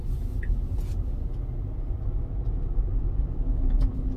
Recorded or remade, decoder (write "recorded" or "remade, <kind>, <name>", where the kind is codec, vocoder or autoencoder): recorded